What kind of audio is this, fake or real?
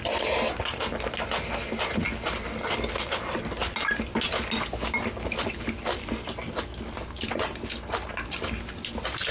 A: real